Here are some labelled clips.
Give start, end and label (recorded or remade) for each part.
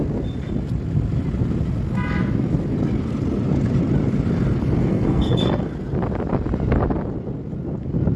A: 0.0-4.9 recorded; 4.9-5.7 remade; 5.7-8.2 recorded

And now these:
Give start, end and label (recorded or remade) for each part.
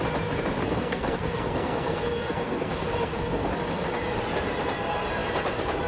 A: 0.0-0.6 recorded; 0.6-3.5 remade; 3.5-5.9 recorded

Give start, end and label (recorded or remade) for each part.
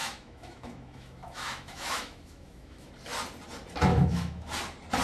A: 0.0-2.9 remade; 2.9-3.9 recorded; 3.9-4.5 remade; 4.5-5.0 recorded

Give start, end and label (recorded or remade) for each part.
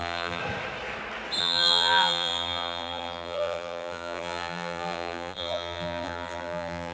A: 0.0-0.4 remade; 0.4-1.4 recorded; 1.4-6.9 remade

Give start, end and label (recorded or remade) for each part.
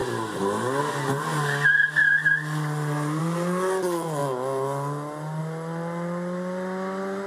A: 0.0-7.3 recorded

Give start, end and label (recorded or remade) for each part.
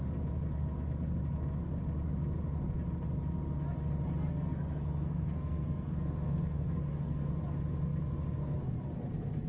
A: 0.0-4.3 recorded; 4.3-7.4 remade; 7.4-9.5 recorded